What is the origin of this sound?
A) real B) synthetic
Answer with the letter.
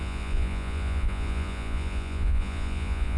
B